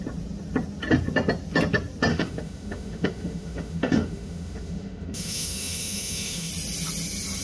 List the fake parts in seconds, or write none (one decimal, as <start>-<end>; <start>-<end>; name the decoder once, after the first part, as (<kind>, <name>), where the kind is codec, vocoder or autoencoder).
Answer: 2.1-6.5 (autoencoder, DAC-VAE)